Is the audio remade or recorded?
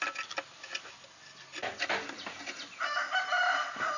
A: recorded